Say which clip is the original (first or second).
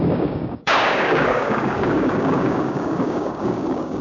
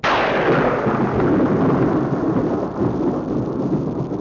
second